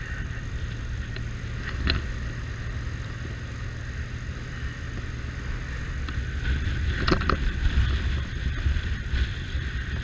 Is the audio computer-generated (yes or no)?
no